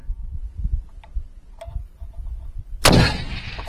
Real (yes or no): yes